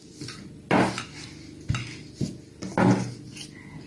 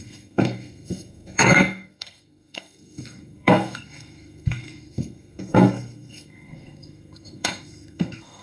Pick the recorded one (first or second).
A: first